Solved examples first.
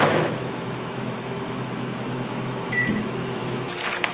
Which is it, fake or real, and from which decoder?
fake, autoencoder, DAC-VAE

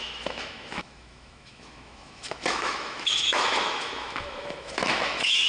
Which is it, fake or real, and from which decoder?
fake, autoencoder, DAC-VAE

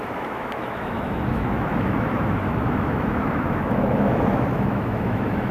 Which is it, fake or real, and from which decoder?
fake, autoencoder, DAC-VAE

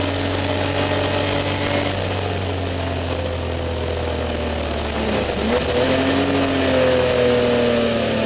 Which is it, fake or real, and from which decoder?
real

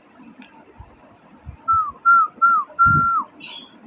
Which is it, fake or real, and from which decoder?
real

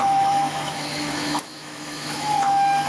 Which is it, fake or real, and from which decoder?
fake, autoencoder, DAC-VAE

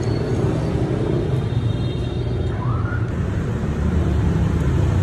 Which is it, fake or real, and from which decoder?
real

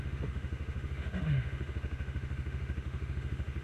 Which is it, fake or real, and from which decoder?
fake, autoencoder, DAC-VAE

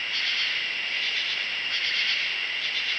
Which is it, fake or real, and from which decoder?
real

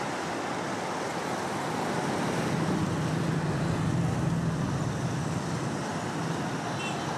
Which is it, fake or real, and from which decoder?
real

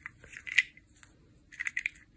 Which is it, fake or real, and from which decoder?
real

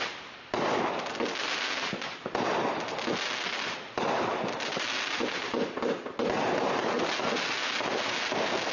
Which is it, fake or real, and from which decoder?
real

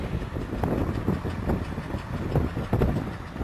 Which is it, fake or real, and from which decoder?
real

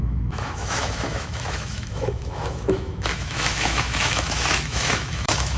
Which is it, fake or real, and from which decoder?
fake, autoencoder, DAC-VAE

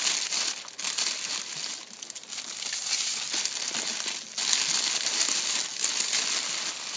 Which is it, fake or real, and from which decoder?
real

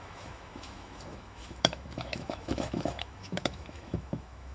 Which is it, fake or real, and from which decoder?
fake, autoencoder, DAC-VAE